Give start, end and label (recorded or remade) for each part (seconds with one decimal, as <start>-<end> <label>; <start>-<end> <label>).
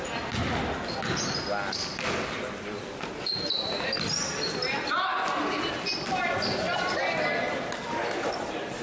0.0-8.8 recorded